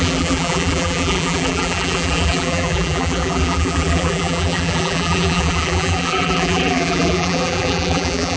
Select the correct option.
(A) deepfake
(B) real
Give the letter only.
A